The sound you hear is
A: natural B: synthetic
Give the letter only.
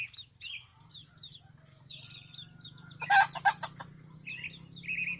A